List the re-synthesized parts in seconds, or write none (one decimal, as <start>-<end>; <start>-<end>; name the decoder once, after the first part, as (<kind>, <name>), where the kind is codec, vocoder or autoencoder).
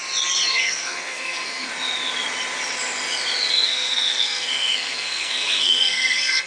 0.5-1.7 (codec, SNAC); 3.5-6.5